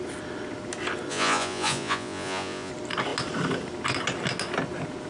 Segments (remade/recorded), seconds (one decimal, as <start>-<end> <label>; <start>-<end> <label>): 0.0-1.1 recorded; 1.1-2.7 remade; 2.7-5.1 recorded